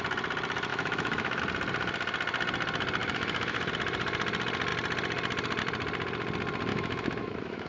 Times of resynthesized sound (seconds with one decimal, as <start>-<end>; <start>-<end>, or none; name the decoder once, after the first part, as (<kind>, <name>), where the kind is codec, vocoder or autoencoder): 0.7-1.4 (autoencoder, DAC-VAE); 3.0-3.7; 6.7-7.7